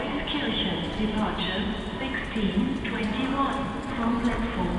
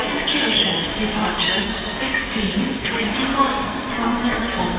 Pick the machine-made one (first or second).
second